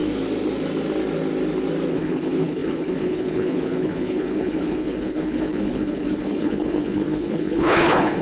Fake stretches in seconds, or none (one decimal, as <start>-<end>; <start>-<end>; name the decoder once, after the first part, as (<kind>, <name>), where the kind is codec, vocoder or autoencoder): 1.9-8.2 (codec, HILCodec)